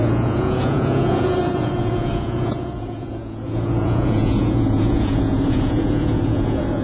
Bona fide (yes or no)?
no